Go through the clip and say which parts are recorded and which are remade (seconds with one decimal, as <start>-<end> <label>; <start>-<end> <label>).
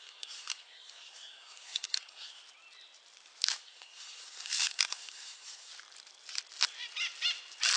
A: 0.0-2.4 remade; 2.4-3.6 recorded; 3.6-5.7 remade; 5.7-7.8 recorded